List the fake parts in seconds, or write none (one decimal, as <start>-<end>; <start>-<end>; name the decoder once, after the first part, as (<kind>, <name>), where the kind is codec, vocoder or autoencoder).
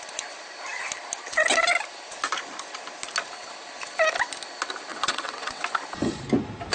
4.9-5.6 (vocoder, WaveNeXt)